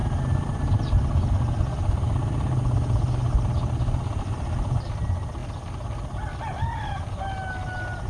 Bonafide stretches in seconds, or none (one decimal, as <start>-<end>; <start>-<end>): 0.0-8.1